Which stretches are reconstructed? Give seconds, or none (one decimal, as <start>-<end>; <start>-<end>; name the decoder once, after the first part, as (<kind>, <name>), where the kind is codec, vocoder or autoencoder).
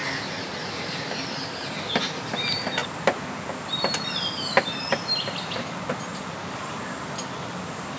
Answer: 2.8-5.6 (vocoder, BigVGAN v2); 6.1-8.0